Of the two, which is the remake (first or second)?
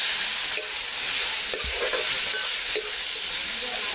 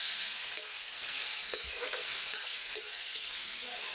second